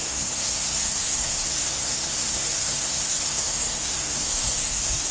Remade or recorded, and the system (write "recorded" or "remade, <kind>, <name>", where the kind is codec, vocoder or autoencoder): remade, codec, SNAC